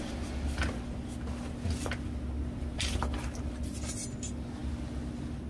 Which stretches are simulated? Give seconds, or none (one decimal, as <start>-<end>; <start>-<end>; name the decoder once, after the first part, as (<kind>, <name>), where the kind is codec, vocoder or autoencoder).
none